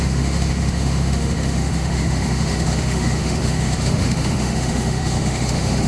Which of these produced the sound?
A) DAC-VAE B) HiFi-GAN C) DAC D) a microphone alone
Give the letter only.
A